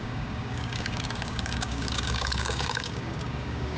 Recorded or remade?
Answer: remade